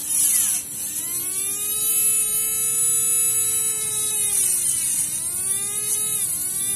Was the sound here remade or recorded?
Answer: recorded